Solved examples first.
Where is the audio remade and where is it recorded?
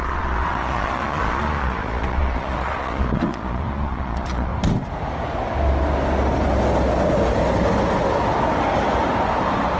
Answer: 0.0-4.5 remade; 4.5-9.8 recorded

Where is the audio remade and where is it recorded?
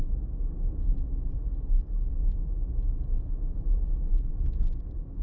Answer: 0.0-5.2 recorded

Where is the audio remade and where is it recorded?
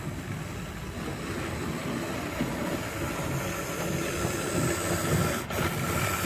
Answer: 0.0-6.3 recorded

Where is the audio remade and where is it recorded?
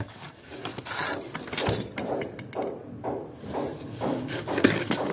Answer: 0.0-0.7 remade; 0.7-3.8 recorded; 3.8-5.1 remade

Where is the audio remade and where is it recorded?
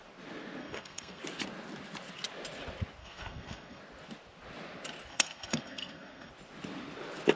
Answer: 0.0-0.6 recorded; 0.6-1.2 remade; 1.2-3.0 recorded; 3.0-3.8 remade; 3.8-5.1 recorded; 5.1-6.3 remade; 6.3-7.4 recorded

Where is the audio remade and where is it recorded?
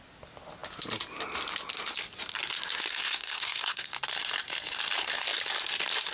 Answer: 0.0-2.9 recorded; 2.9-3.9 remade; 3.9-6.1 recorded